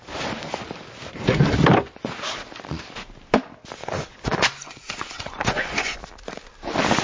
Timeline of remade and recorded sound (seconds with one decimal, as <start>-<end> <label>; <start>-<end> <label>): 0.0-3.8 recorded; 3.8-6.0 remade; 6.0-7.0 recorded